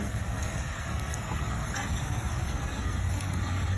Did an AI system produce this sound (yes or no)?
yes